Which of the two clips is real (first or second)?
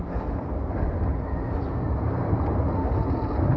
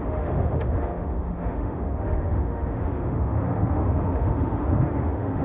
first